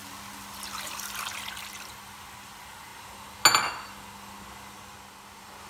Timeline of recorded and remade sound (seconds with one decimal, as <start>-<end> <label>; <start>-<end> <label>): 0.0-5.7 recorded